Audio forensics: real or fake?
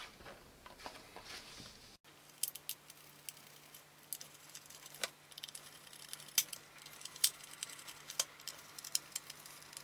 real